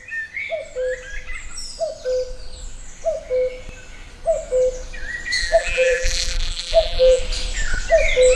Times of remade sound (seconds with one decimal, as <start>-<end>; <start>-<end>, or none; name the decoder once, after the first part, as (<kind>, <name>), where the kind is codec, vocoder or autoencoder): 5.4-7.2 (vocoder, BigVGAN v2)